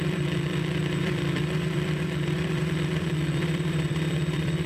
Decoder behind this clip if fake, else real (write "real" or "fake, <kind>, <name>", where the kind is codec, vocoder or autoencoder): fake, vocoder, BigVGAN v2